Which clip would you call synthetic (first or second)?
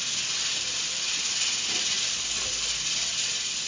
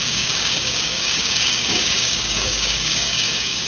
second